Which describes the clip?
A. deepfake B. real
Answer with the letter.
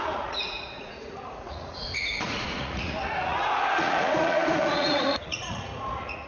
A